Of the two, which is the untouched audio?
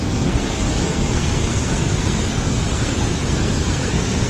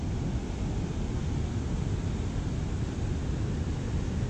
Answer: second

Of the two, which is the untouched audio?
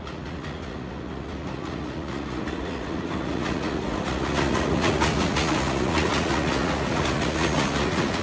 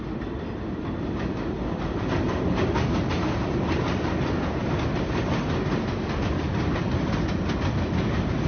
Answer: second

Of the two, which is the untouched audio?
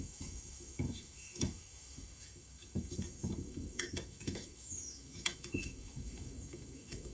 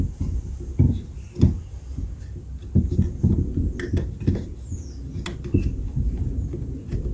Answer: second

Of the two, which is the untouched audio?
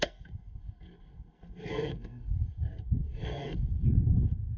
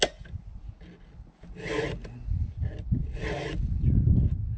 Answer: second